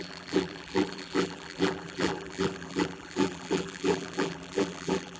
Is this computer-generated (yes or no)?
yes